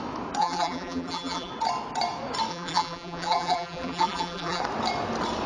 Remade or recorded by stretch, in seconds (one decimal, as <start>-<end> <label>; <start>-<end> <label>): 0.0-0.4 recorded; 0.4-1.5 remade; 1.5-2.5 recorded; 2.5-4.6 remade; 4.6-5.5 recorded